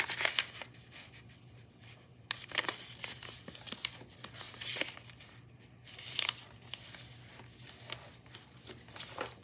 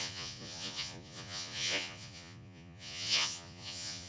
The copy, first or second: second